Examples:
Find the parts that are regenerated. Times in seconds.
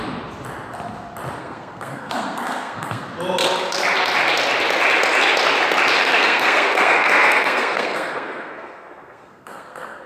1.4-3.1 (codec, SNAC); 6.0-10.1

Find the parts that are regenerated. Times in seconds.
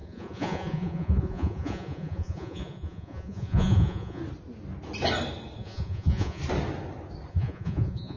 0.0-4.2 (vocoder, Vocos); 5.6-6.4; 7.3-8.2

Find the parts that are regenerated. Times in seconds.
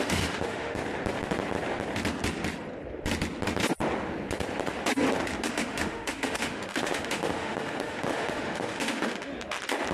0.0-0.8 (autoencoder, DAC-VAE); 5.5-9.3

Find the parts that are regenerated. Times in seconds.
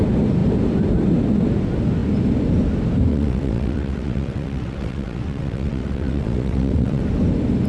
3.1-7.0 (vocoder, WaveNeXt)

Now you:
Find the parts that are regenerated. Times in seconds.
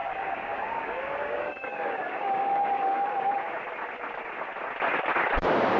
0.0-3.3 (codec, DAC)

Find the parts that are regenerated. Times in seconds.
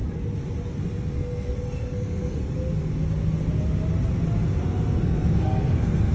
0.8-2.4 (codec, SNAC); 4.6-6.1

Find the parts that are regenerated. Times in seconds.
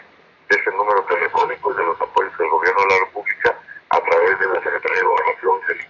1.1-2.1 (codec, SNAC); 4.2-5.9